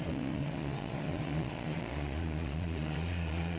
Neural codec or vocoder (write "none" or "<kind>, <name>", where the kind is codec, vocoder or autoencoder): vocoder, Vocos